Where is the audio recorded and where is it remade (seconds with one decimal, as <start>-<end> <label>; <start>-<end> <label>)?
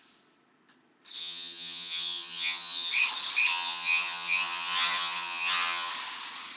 0.0-1.2 recorded; 1.2-2.9 remade; 2.9-3.5 recorded; 3.5-5.9 remade; 5.9-6.6 recorded